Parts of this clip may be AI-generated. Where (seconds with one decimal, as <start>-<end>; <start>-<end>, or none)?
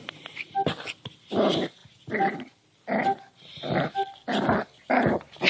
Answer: none